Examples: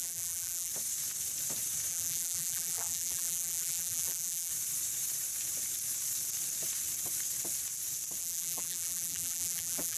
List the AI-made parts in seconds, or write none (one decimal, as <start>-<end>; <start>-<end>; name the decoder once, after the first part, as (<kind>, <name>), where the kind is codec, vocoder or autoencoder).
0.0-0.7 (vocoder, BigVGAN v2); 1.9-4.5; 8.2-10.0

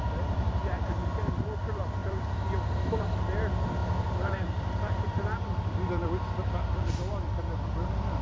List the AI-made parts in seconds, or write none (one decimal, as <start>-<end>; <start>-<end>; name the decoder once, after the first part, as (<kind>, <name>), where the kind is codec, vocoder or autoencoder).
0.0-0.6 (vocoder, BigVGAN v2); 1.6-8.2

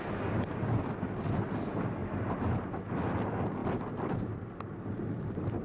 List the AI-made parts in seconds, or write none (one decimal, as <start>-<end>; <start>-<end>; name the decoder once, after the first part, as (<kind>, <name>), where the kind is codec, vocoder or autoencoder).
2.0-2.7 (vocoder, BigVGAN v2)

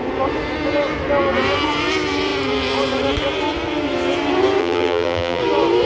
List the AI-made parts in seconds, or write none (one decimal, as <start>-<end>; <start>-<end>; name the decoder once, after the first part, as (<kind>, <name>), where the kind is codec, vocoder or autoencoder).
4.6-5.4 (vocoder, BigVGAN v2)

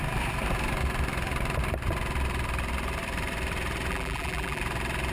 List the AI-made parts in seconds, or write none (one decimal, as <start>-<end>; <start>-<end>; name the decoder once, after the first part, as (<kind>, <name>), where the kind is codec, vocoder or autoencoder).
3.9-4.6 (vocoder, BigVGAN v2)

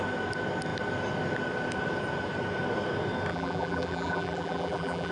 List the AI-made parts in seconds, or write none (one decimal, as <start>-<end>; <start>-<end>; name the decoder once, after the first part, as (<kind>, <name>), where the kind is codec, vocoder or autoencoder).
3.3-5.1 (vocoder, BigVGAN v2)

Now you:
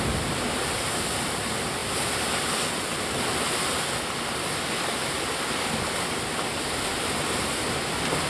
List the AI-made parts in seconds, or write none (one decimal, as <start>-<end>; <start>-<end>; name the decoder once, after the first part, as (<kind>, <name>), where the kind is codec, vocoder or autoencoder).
none

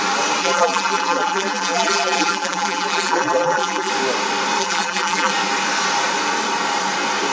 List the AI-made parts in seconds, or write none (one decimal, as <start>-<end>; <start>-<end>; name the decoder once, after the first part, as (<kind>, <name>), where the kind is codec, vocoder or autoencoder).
0.4-3.9 (vocoder, BigVGAN v2); 4.6-5.3